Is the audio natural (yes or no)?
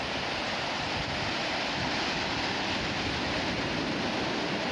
yes